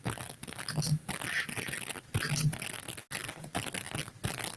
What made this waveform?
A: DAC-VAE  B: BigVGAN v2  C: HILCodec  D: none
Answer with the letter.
D